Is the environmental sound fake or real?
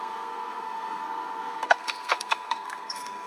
fake